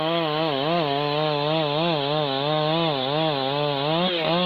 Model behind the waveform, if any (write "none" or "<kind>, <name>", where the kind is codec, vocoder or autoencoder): none